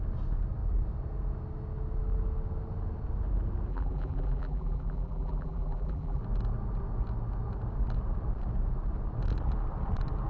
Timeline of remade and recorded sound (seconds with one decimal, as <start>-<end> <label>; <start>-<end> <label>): 0.0-3.7 recorded; 3.7-6.2 remade; 6.2-10.3 recorded